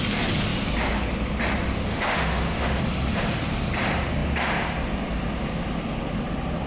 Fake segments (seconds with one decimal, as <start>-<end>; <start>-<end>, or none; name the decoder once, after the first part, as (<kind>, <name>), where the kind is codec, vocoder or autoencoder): 1.9-2.8 (autoencoder, DAC-VAE)